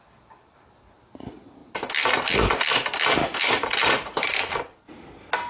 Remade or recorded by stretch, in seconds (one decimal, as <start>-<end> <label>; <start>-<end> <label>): 0.0-3.2 recorded; 3.2-4.5 remade; 4.5-5.5 recorded

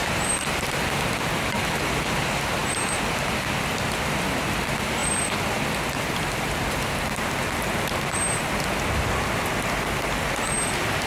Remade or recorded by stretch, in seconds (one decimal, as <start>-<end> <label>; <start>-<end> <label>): 0.0-1.4 remade; 1.4-11.1 recorded

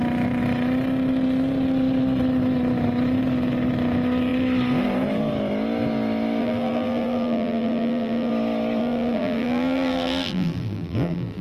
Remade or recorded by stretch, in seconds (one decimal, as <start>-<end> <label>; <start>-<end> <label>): 0.0-6.4 recorded; 6.4-8.3 remade; 8.3-8.8 recorded; 8.8-11.4 remade

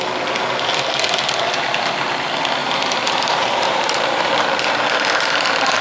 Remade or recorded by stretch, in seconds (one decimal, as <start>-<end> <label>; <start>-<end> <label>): 0.0-2.6 recorded; 2.6-4.3 remade; 4.3-5.8 recorded